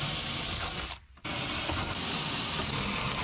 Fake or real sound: real